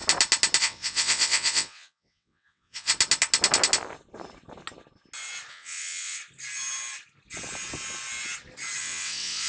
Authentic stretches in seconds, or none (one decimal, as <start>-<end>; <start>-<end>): 0.0-0.6; 2.9-5.5; 6.2-8.8